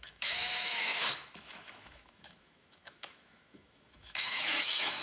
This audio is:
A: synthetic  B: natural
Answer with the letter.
A